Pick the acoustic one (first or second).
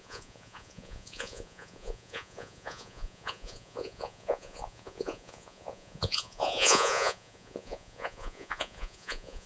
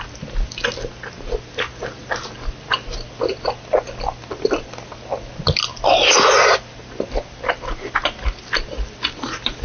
second